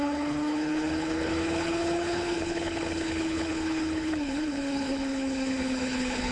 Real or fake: fake